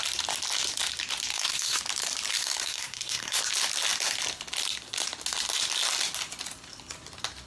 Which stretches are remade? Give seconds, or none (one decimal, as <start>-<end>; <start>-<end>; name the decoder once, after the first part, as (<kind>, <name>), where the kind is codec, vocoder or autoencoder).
1.3-1.8 (codec, SNAC); 2.3-3.4